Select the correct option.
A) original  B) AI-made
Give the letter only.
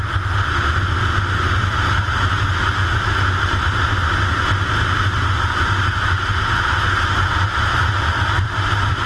A